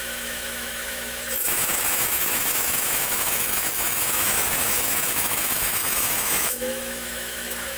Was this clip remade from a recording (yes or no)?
yes